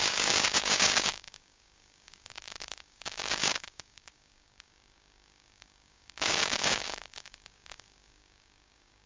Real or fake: fake